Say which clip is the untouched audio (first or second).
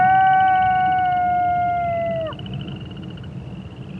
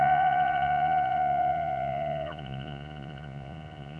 first